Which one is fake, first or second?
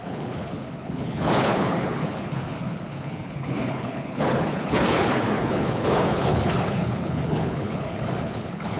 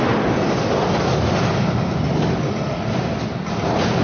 first